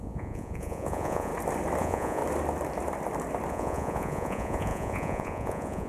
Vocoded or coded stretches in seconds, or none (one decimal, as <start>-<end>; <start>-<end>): 0.0-1.3; 1.8-2.2; 3.5-5.9